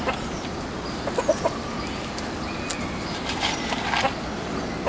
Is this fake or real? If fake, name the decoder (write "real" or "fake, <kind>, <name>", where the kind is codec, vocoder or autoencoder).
real